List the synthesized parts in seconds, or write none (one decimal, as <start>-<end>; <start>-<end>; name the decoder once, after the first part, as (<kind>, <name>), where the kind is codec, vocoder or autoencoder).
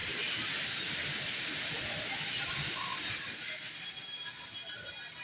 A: none